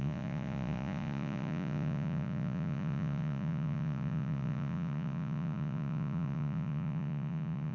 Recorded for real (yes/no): no